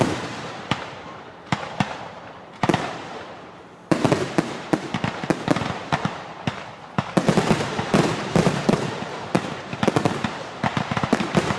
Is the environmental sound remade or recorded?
remade